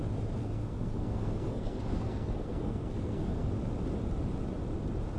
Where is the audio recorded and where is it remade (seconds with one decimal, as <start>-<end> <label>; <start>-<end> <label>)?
0.0-0.4 recorded; 0.4-3.5 remade; 3.5-5.2 recorded